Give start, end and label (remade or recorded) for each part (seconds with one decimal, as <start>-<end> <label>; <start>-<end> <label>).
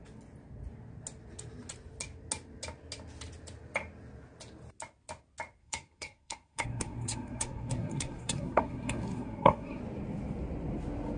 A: 0.0-5.6 recorded; 5.6-9.8 remade; 9.8-11.2 recorded